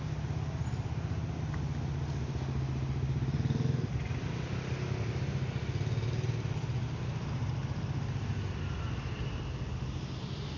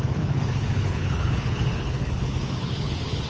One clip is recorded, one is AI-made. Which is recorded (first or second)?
first